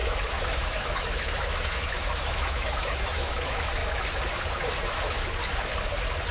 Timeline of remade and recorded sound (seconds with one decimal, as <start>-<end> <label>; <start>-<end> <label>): 0.0-3.8 remade; 3.8-4.6 recorded; 4.6-5.2 remade; 5.2-6.3 recorded